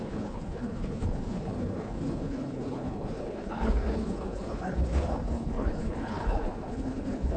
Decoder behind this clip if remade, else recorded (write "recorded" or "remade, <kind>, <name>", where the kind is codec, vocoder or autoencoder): remade, codec, HILCodec